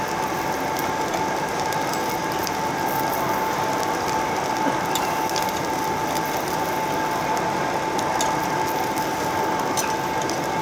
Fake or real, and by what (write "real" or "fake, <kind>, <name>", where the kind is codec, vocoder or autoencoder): real